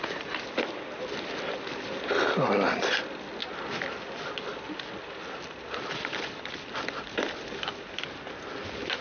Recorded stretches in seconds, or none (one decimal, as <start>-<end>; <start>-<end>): 0.0-9.0